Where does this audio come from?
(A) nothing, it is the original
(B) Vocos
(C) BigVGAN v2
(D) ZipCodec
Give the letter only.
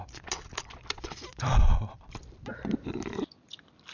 C